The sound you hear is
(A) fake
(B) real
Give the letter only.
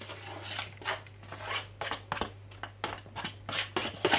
B